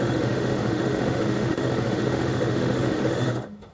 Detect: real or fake fake